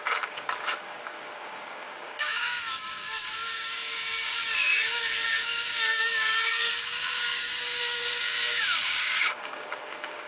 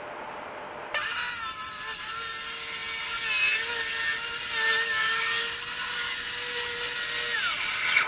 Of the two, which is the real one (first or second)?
second